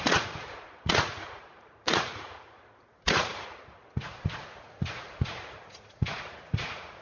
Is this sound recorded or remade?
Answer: remade